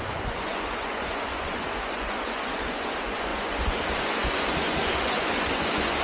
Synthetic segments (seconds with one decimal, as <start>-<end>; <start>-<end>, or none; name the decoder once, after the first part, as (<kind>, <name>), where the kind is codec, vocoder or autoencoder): 0.0-6.0 (vocoder, Vocos)